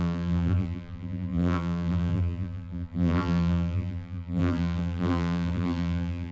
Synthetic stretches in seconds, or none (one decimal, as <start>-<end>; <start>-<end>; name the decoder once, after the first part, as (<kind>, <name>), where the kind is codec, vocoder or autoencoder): 0.0-6.3 (vocoder, BigVGAN v2)